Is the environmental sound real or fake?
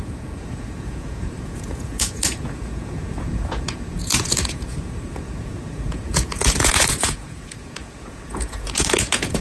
fake